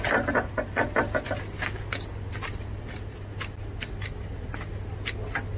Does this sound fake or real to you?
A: real